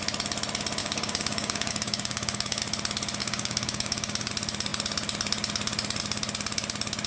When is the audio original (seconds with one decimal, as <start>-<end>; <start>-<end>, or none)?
0.0-0.8; 2.6-3.2; 4.3-7.1

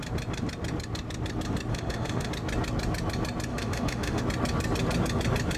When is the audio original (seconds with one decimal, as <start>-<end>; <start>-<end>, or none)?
0.0-1.7; 2.3-3.5; 4.2-5.6

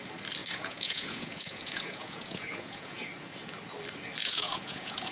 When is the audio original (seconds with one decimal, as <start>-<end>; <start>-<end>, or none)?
0.0-0.4; 3.1-4.2

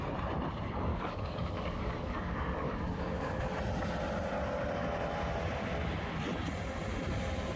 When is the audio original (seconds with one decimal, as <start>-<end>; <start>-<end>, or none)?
0.0-0.9; 3.4-7.6